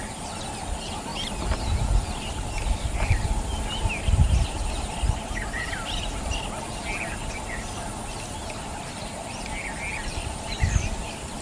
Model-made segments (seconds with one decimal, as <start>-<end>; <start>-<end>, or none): none